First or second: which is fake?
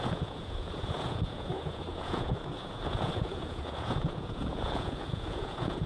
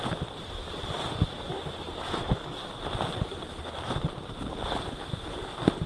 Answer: first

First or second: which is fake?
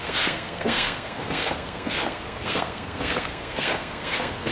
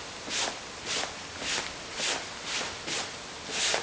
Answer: first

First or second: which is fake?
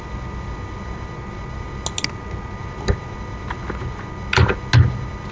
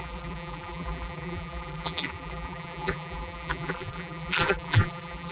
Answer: second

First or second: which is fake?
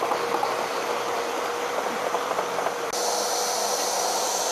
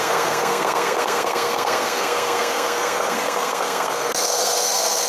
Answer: second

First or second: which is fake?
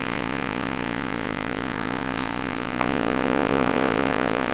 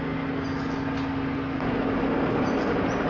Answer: first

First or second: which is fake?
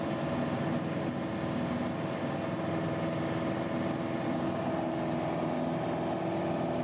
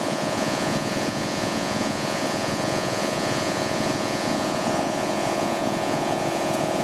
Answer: second